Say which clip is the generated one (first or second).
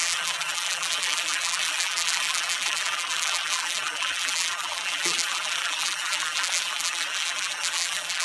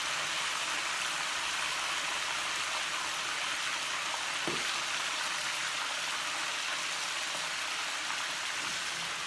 first